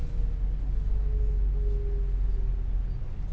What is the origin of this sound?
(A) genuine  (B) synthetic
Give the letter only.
A